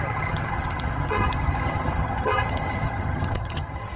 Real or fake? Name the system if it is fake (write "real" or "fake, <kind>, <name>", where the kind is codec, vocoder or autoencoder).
fake, vocoder, HiFi-GAN